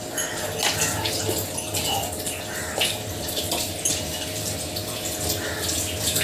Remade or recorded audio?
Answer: recorded